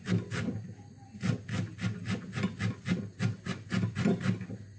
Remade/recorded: recorded